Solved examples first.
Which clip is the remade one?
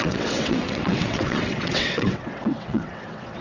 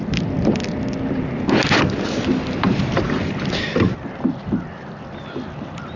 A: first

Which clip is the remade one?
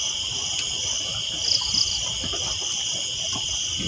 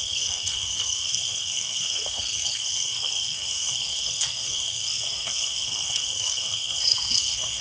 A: second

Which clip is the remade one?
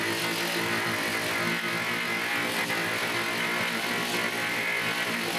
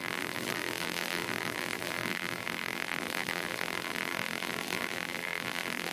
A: second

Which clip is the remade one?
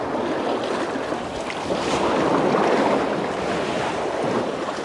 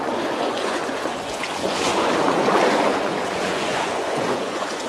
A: second